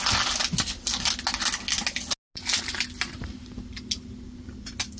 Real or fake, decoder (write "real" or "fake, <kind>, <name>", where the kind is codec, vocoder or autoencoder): real